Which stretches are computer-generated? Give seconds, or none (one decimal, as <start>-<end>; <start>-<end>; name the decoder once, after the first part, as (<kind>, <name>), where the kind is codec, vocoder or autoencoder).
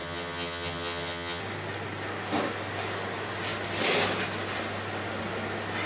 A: 0.0-1.4 (vocoder, HiFi-GAN)